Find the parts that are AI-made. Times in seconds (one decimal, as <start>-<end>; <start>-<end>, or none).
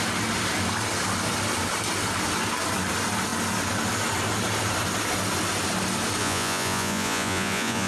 6.2-7.9